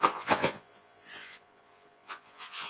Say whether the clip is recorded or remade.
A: remade